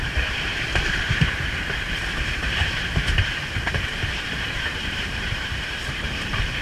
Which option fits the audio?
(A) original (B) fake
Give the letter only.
B